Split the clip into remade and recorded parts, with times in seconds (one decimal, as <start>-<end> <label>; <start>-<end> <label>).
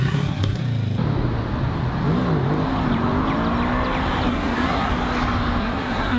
0.0-0.6 remade; 0.6-4.3 recorded; 4.3-4.9 remade; 4.9-5.6 recorded; 5.6-6.2 remade